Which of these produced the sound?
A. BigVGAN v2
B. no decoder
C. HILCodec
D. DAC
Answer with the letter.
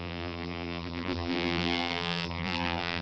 A